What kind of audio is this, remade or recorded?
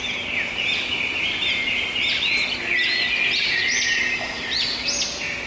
recorded